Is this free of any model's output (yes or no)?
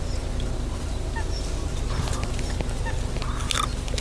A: yes